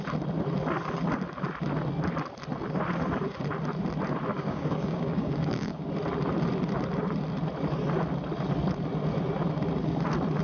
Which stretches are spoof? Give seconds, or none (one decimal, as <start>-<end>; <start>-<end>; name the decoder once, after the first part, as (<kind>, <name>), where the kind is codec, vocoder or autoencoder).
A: 4.3-5.9 (codec, DAC)